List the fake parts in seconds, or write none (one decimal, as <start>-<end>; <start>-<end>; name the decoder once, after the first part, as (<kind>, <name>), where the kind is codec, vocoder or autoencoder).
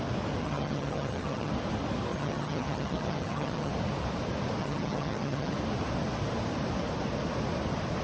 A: 0.4-1.5 (vocoder, HiFi-GAN); 2.1-3.7; 4.6-5.5